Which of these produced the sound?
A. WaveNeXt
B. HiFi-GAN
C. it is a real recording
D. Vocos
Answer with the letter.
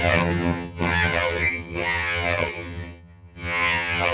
B